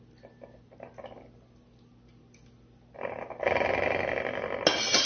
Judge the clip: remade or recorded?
recorded